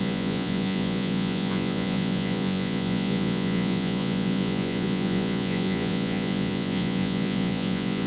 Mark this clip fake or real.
fake